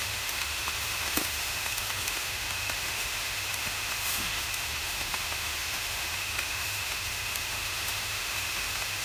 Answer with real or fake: fake